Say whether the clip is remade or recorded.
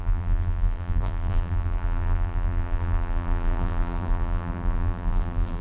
remade